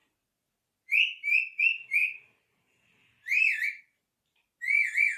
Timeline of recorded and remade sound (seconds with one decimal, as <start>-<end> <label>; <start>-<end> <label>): 0.0-2.0 recorded; 2.0-3.8 remade; 3.8-5.2 recorded

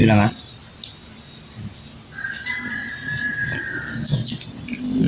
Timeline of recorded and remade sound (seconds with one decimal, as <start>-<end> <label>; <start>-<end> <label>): 0.0-5.1 recorded